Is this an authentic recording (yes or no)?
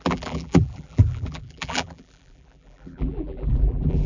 no